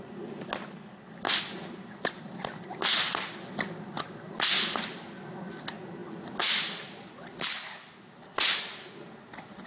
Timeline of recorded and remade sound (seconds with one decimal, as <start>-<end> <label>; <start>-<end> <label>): 0.0-9.7 recorded